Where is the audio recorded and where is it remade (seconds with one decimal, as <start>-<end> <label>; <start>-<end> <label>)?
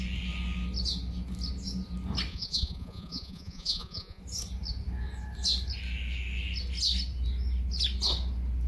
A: 0.0-2.3 recorded; 2.3-4.2 remade; 4.2-8.7 recorded